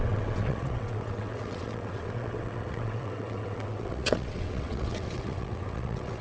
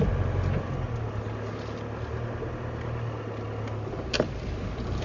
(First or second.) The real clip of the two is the second